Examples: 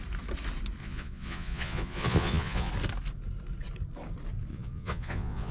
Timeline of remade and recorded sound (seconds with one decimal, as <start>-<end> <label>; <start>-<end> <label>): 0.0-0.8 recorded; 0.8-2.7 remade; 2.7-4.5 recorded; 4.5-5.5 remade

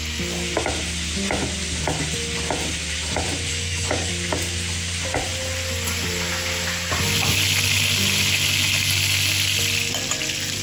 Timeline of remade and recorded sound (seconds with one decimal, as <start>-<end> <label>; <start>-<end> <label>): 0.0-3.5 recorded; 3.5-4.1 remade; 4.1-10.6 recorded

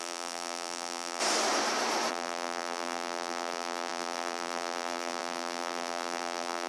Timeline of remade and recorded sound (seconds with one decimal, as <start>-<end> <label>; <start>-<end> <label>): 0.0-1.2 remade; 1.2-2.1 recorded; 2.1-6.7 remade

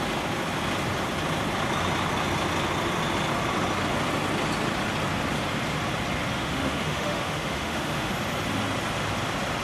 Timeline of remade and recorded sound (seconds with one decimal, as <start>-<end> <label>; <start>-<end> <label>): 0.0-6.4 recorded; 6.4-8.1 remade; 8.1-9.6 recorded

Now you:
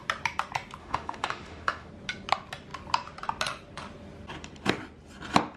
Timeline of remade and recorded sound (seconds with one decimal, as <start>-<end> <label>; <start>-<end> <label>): 0.0-0.8 recorded; 0.8-1.9 remade; 1.9-5.6 recorded